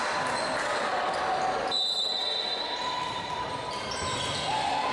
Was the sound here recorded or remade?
recorded